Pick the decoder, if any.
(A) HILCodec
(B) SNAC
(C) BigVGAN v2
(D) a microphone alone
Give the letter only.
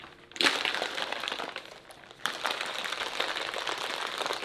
C